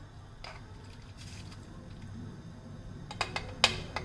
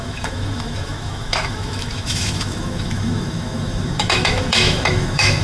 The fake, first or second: second